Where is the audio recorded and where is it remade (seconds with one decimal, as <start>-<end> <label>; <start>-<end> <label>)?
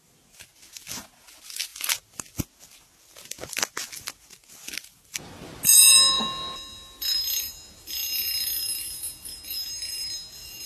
0.0-10.7 recorded